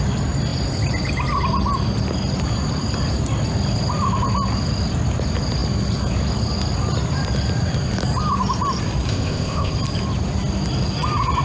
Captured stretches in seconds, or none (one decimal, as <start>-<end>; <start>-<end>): 0.0-9.1; 9.7-11.4